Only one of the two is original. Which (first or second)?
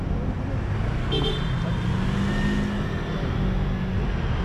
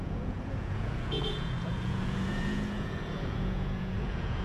first